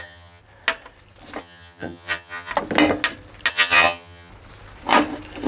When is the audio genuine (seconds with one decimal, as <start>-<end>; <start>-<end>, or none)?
0.4-1.4; 2.5-3.5; 4.3-5.5